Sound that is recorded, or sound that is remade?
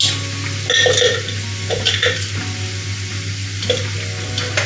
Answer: recorded